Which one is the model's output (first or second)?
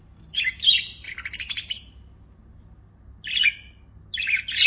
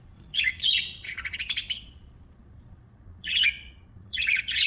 second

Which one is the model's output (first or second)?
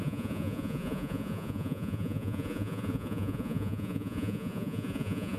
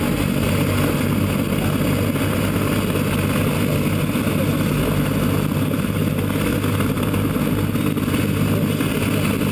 first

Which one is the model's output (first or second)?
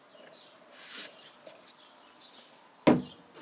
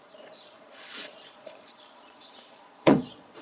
second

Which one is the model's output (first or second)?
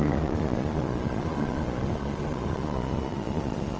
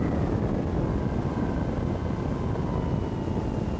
first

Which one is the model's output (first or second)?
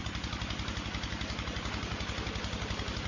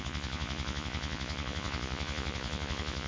second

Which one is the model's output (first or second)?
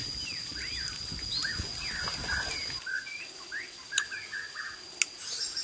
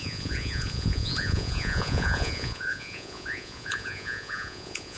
second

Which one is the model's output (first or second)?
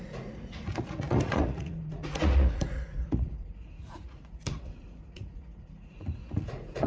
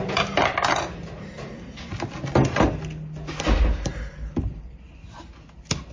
first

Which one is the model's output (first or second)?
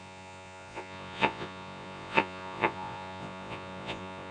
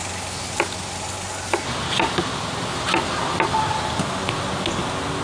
first